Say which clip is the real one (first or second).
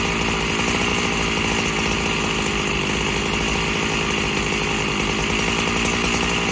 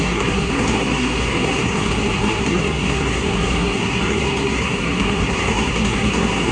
first